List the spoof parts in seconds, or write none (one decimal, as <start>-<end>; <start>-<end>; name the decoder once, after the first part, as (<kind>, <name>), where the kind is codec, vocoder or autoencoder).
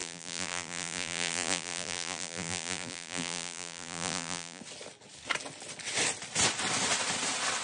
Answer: 0.0-4.6 (vocoder, BigVGAN v2)